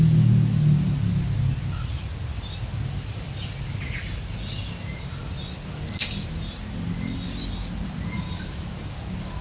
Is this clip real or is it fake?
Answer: real